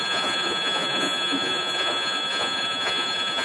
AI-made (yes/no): yes